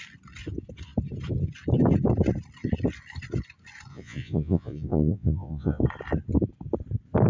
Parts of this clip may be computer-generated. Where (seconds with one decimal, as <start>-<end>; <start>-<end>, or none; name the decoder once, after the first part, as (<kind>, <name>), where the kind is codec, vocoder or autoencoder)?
3.9-5.8 (vocoder, Vocos)